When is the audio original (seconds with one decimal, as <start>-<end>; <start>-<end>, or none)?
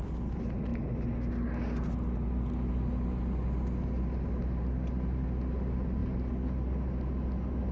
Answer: 0.0-7.7